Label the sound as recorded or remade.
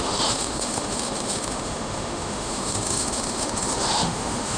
remade